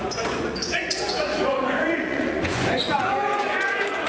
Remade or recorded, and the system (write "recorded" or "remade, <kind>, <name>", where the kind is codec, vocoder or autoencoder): remade, vocoder, Vocos